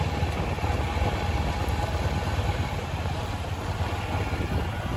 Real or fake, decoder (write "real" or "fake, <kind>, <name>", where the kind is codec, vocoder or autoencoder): real